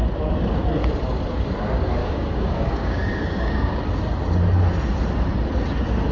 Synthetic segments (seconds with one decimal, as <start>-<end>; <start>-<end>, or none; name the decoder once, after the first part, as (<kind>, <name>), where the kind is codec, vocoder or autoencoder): 2.0-3.8 (codec, DAC)